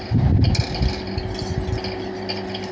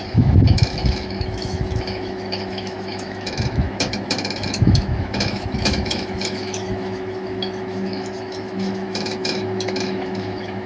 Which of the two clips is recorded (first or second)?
first